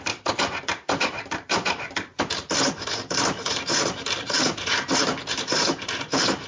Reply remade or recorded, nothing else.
remade